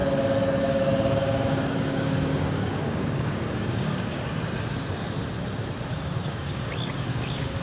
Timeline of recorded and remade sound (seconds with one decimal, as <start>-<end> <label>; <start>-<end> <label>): 0.0-0.6 recorded; 0.6-4.1 remade; 4.1-5.9 recorded; 5.9-7.6 remade